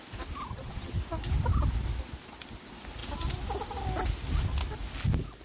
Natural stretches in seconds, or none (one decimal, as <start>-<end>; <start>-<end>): 0.0-0.5; 1.0-5.4